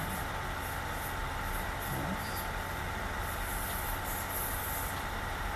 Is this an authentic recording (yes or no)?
yes